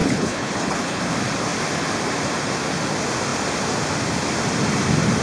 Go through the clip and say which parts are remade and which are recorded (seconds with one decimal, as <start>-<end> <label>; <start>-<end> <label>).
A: 0.0-1.0 remade; 1.0-5.2 recorded